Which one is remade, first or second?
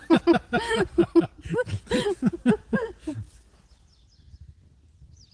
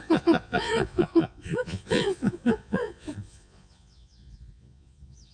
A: second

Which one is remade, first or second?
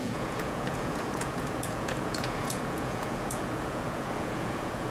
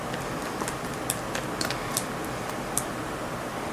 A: first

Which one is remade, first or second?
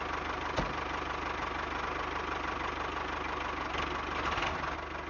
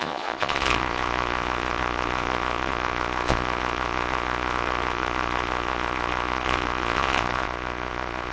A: second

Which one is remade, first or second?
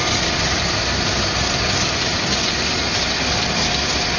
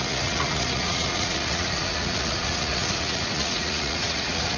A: second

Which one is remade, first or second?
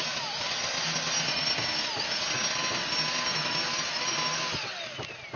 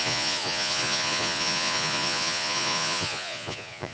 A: second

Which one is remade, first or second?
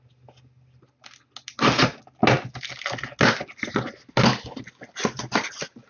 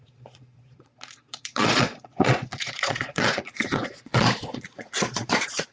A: second